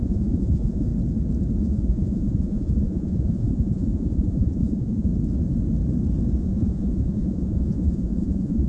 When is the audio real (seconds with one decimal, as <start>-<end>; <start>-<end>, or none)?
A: 0.9-1.6; 5.1-6.4